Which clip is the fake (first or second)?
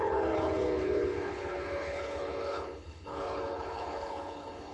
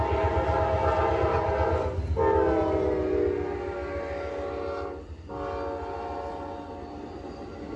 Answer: first